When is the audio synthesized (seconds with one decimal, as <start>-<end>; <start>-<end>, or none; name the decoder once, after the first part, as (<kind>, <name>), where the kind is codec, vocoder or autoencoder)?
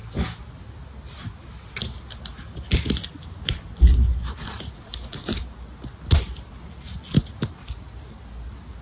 none